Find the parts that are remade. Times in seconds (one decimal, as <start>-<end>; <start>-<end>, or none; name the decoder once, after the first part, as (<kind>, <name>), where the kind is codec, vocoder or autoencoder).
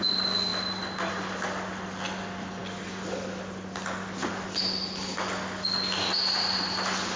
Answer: none